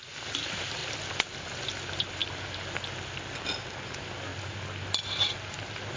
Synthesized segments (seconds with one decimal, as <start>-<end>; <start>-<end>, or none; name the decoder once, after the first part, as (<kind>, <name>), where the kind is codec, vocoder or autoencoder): none